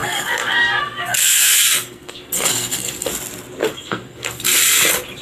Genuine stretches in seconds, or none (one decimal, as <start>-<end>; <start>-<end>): 3.1-3.6; 4.6-5.2